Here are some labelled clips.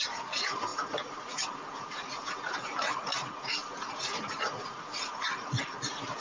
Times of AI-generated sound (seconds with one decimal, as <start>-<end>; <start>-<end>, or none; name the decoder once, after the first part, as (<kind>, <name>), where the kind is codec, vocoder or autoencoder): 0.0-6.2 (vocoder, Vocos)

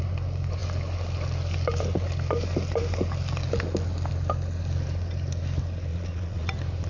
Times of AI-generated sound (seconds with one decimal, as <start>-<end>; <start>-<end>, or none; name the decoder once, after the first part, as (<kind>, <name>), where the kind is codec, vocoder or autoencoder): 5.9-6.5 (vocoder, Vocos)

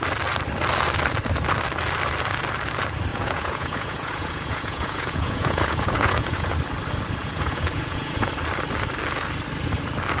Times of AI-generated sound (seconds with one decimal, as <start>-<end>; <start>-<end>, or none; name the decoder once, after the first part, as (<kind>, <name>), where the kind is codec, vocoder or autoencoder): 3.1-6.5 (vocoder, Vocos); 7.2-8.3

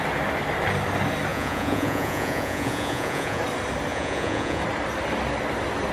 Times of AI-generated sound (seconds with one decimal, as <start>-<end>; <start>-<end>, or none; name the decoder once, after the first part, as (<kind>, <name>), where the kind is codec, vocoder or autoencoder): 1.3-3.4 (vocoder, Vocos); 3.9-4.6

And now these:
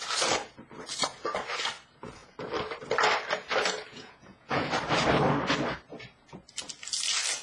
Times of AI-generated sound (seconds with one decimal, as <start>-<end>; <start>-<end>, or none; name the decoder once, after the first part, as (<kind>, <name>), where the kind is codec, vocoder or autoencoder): 3.9-4.7 (vocoder, Vocos)

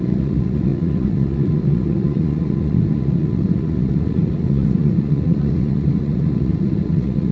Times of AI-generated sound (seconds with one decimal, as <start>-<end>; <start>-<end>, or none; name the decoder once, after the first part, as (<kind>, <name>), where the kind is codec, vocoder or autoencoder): 0.0-7.3 (vocoder, Vocos)